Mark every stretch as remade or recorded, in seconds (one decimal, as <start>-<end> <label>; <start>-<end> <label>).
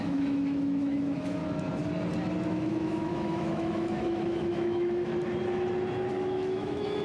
0.0-1.4 remade; 1.4-2.5 recorded; 2.5-5.1 remade; 5.1-6.1 recorded; 6.1-7.0 remade